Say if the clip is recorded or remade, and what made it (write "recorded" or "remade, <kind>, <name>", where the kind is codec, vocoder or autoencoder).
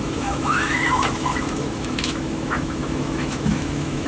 remade, autoencoder, DAC-VAE